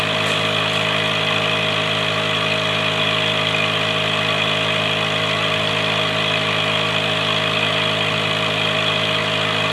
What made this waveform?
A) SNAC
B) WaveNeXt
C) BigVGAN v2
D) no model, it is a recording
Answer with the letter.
D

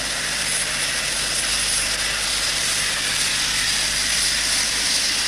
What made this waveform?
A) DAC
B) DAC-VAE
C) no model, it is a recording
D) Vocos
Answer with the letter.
C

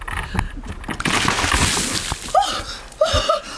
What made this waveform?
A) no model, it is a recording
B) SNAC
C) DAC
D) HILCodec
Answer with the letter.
A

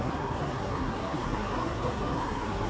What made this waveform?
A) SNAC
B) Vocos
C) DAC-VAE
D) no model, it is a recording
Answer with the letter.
A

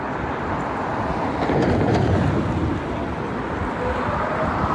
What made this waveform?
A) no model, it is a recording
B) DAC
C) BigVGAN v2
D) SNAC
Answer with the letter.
A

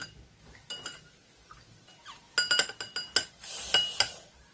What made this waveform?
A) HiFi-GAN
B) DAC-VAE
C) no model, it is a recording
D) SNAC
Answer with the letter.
C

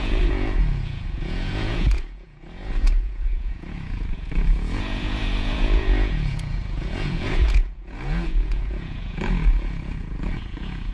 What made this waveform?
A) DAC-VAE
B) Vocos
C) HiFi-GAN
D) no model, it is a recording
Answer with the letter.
B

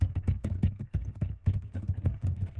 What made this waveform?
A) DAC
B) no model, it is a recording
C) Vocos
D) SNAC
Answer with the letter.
D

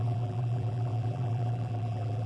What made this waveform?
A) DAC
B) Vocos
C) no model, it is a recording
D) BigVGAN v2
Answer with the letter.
D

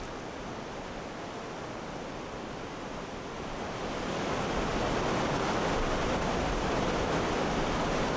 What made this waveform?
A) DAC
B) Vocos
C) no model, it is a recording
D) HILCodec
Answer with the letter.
C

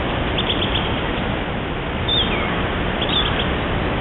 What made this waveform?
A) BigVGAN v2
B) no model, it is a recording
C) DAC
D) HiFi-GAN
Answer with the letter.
B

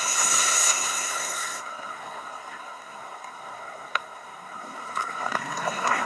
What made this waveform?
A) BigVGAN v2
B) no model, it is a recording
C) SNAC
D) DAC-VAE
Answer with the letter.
C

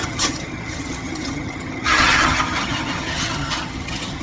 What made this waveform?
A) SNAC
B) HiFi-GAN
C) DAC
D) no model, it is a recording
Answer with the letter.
B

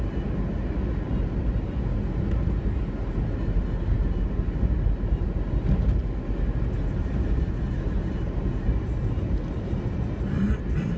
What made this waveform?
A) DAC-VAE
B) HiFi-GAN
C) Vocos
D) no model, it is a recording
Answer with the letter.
D